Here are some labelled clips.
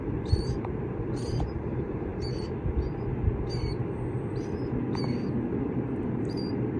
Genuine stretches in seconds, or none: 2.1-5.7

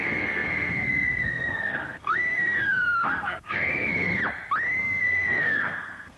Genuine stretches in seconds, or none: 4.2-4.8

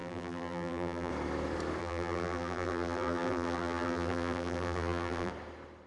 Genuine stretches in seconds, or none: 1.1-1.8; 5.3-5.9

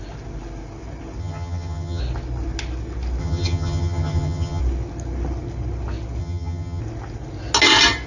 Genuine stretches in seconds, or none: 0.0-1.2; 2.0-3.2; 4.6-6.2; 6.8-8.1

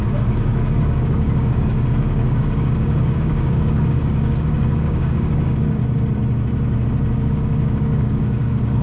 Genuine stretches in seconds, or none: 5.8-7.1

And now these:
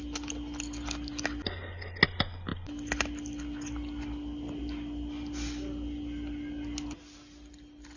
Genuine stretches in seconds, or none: 0.0-8.0